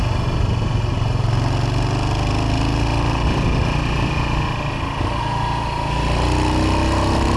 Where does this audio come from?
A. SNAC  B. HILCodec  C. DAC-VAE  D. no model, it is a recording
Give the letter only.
D